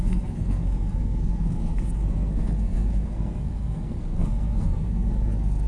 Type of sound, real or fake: fake